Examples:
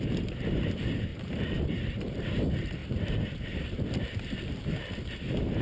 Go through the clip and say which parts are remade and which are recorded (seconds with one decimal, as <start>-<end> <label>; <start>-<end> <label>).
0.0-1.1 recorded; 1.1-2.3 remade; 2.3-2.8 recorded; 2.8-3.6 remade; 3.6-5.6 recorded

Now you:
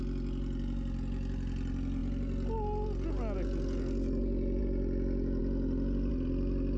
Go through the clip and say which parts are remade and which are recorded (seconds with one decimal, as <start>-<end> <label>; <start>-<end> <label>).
0.0-6.8 recorded

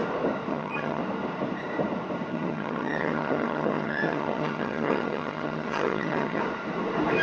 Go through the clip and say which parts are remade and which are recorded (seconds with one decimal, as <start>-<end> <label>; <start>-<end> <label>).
0.0-0.5 recorded; 0.5-1.0 remade; 1.0-2.3 recorded; 2.3-6.4 remade; 6.4-7.2 recorded

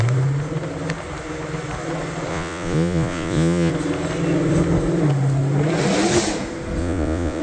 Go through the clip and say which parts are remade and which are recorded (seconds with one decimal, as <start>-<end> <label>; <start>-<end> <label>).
0.0-2.3 recorded; 2.3-3.7 remade; 3.7-6.8 recorded; 6.8-7.4 remade

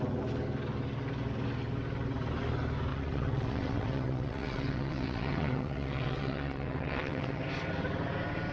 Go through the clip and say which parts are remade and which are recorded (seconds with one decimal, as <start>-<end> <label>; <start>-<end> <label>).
0.0-2.9 recorded; 2.9-7.4 remade; 7.4-8.5 recorded

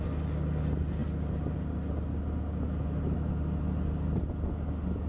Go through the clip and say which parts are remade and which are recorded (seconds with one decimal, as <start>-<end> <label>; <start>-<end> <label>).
0.0-5.1 recorded

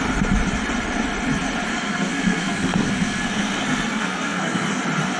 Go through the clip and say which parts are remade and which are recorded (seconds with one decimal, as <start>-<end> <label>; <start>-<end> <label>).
0.0-1.7 recorded; 1.7-4.8 remade; 4.8-5.2 recorded